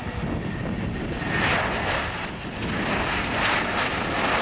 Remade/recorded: recorded